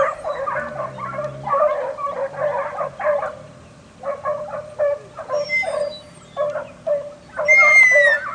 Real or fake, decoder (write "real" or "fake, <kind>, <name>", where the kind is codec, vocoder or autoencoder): real